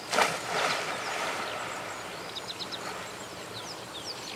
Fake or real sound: real